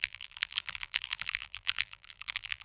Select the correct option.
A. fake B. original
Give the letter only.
A